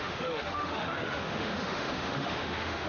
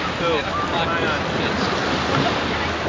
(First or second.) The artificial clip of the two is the first